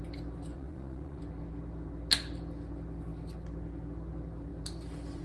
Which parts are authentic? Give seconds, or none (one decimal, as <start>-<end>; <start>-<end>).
0.0-0.5; 1.2-5.2